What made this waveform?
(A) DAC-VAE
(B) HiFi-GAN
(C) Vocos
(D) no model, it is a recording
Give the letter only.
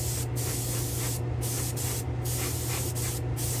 D